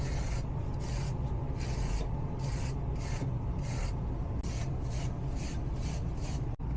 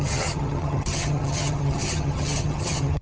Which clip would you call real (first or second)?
first